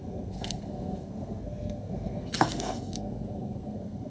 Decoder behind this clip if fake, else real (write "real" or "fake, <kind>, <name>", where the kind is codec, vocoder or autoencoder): fake, codec, SNAC